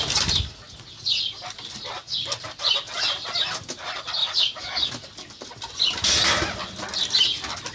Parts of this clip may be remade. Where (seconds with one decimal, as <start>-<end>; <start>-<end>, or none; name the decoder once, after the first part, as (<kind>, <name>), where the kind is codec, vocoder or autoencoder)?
4.2-4.9 (codec, DAC)